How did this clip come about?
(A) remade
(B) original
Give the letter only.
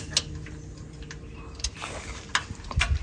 B